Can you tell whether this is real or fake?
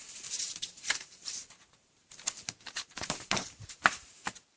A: fake